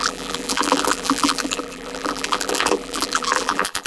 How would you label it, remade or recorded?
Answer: remade